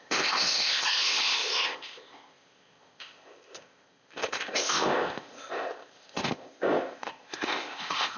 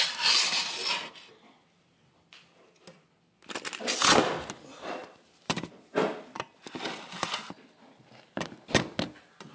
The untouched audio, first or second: second